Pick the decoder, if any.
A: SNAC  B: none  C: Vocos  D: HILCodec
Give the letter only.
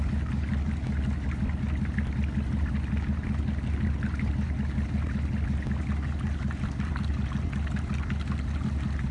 B